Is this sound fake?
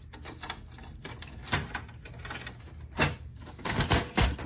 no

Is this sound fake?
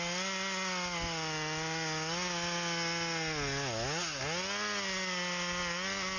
no